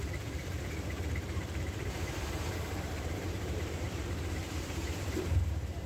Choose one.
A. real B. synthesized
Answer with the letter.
B